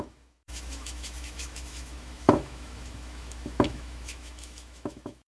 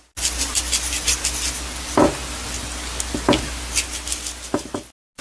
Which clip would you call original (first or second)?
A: second